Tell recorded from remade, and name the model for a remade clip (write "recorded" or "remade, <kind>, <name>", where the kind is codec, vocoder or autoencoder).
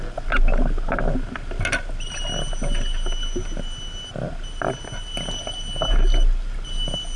recorded